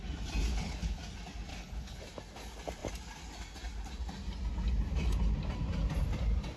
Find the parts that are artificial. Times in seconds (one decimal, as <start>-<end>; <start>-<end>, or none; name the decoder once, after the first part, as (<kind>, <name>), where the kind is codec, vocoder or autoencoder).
0.5-1.0 (codec, HILCodec); 1.5-2.0